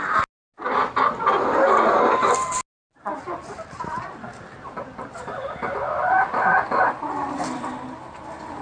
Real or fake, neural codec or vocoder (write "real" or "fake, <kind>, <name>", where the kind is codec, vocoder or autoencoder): real